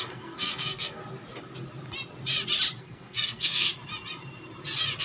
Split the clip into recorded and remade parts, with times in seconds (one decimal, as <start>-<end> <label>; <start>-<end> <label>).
0.0-1.0 remade; 1.0-2.8 recorded; 2.8-3.7 remade; 3.7-5.0 recorded